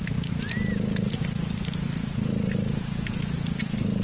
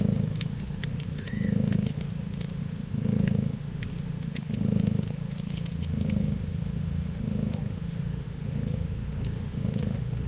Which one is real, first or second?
first